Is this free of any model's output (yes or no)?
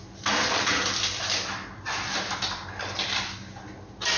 yes